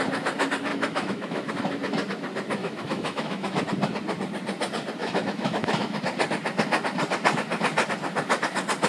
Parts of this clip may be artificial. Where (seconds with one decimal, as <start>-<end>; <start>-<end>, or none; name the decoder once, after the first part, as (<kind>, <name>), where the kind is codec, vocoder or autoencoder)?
0.7-1.5 (autoencoder, DAC-VAE); 2.6-3.6; 5.0-6.0